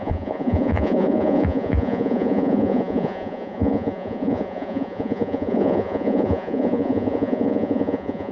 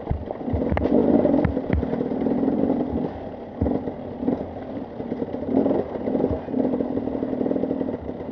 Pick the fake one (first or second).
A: first